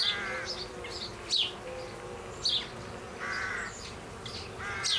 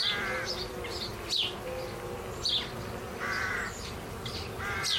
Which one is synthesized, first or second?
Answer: second